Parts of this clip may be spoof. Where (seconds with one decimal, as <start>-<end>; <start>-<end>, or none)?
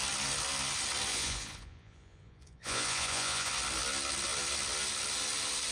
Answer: 1.1-3.5